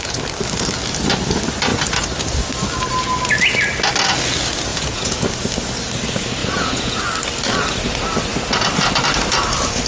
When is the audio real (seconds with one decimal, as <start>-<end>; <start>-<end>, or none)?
0.0-4.7; 5.3-6.4; 7.0-9.9